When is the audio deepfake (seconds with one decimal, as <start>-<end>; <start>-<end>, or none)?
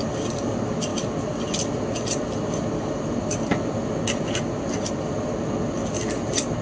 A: none